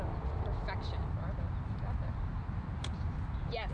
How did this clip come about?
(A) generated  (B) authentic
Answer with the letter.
B